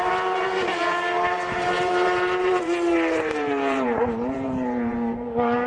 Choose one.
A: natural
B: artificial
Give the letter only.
B